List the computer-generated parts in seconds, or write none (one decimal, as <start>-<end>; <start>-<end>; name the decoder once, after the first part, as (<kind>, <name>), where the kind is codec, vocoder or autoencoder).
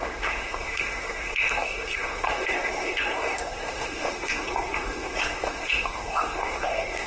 0.0-7.1 (codec, SNAC)